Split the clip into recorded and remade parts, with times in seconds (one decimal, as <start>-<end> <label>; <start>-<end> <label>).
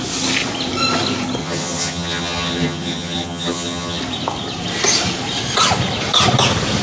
0.0-1.4 recorded; 1.4-4.0 remade; 4.0-6.8 recorded